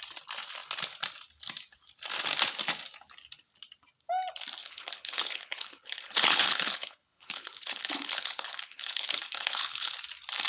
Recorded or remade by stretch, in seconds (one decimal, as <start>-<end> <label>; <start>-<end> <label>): 0.0-4.6 recorded; 4.6-9.9 remade; 9.9-10.5 recorded